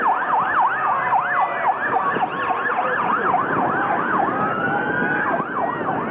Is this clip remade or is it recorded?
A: recorded